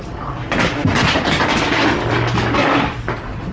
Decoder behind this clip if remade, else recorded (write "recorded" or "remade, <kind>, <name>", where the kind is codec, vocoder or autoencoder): recorded